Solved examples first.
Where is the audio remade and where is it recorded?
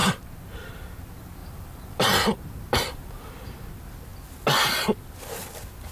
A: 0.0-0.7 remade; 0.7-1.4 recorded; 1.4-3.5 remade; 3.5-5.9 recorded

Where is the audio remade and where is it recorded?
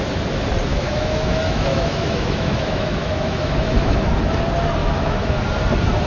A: 0.0-0.7 recorded; 0.7-4.1 remade; 4.1-4.8 recorded; 4.8-5.4 remade; 5.4-6.1 recorded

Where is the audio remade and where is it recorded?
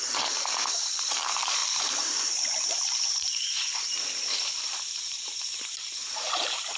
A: 0.0-3.6 remade; 3.6-4.5 recorded; 4.5-6.8 remade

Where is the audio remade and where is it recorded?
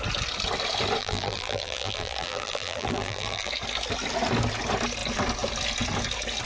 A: 0.0-1.0 recorded; 1.0-3.5 remade; 3.5-6.5 recorded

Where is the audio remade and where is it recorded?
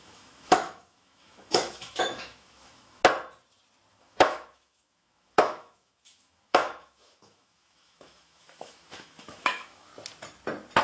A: 0.0-3.0 remade; 3.0-3.9 recorded; 3.9-9.9 remade; 9.9-10.8 recorded